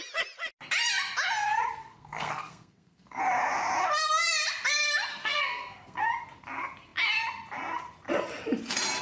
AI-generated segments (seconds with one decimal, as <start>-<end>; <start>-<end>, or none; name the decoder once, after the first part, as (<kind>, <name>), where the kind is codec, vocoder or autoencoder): 1.8-3.2 (codec, SNAC); 5.1-6.1